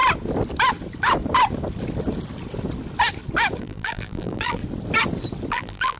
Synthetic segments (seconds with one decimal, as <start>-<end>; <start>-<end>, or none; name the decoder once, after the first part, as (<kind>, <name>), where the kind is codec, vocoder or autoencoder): 3.6-4.6 (vocoder, BigVGAN v2); 5.5-6.0

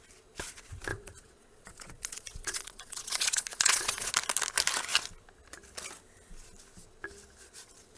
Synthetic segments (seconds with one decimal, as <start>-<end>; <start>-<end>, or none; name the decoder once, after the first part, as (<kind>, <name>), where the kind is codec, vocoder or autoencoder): 0.9-4.1 (vocoder, Vocos)

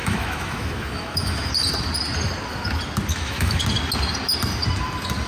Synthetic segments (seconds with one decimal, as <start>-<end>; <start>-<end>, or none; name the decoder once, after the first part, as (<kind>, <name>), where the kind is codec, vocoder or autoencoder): 0.0-1.5 (autoencoder, DAC-VAE); 3.1-3.6

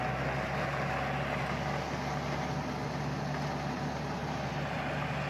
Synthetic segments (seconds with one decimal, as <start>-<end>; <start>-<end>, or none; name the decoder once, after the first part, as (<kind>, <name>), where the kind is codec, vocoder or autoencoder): 4.2-4.8 (vocoder, BigVGAN v2)